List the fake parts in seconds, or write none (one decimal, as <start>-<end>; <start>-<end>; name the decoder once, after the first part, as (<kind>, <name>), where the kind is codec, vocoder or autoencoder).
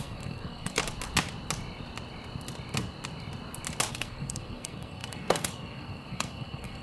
0.0-0.8 (codec, SNAC); 3.9-6.8